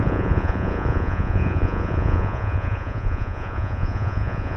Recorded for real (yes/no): no